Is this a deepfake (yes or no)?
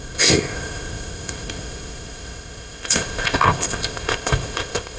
yes